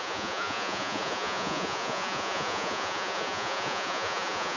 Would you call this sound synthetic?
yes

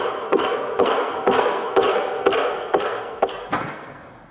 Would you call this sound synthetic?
yes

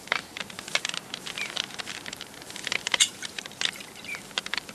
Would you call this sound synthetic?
yes